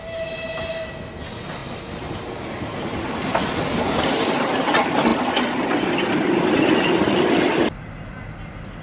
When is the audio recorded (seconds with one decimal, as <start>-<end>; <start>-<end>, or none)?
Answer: 0.0-8.8